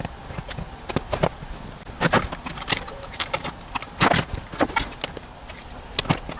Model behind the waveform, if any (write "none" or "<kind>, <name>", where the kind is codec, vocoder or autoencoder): none